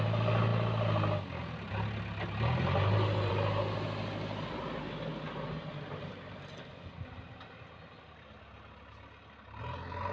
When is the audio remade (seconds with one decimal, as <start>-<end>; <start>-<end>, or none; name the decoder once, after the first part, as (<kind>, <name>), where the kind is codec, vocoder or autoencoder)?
none